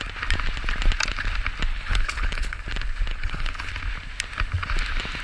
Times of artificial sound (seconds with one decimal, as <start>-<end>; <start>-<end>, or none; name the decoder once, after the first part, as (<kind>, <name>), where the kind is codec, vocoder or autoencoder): 1.7-2.6 (codec, HILCodec); 3.1-3.7